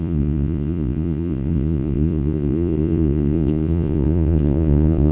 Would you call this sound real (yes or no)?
no